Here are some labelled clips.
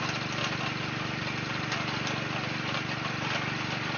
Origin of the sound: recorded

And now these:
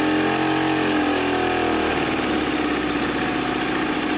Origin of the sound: recorded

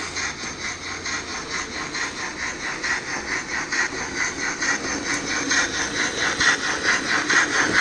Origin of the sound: recorded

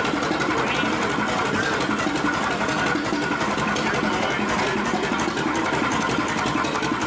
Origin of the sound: recorded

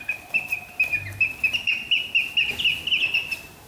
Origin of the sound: recorded